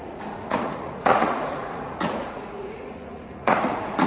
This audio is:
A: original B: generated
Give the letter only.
B